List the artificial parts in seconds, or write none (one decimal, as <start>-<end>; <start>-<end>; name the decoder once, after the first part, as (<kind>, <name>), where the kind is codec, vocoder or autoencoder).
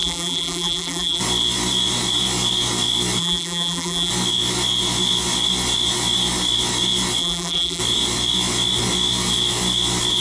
0.0-1.2 (vocoder, BigVGAN v2); 3.2-4.1; 7.2-7.8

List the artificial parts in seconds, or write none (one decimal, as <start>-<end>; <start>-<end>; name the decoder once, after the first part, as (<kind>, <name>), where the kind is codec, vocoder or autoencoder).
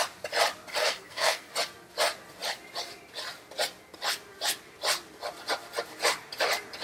0.8-1.5 (codec, SNAC)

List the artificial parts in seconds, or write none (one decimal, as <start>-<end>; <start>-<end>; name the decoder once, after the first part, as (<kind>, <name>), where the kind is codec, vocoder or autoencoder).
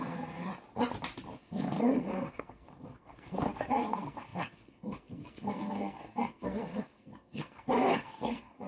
0.0-0.5 (codec, SNAC); 1.4-8.7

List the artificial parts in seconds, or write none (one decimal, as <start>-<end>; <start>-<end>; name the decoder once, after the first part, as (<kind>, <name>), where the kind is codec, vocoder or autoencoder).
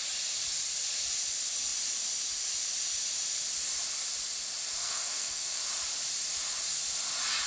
4.8-5.6 (codec, SNAC)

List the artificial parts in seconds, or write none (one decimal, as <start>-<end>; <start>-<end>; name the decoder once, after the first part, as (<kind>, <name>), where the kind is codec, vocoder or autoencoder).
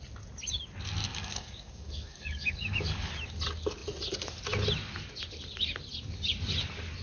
1.1-3.1 (codec, DAC)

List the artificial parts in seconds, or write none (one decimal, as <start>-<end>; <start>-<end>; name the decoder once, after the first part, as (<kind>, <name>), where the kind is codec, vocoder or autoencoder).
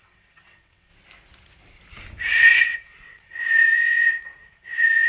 0.0-0.9 (vocoder, WaveNeXt); 2.6-5.1